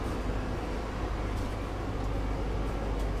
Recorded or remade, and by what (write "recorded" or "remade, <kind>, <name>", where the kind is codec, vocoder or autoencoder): recorded